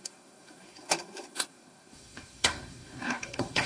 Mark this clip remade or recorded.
remade